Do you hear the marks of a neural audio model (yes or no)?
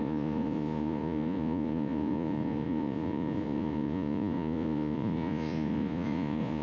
yes